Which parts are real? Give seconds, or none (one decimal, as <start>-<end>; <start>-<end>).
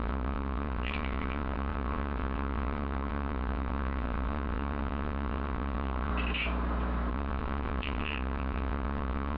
6.1-7.1